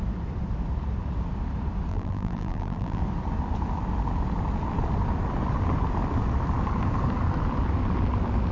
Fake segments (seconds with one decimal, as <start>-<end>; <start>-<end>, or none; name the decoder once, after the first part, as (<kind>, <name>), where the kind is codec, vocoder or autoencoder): 1.9-3.0 (vocoder, BigVGAN v2)